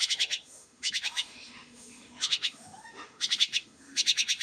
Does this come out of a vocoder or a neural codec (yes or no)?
yes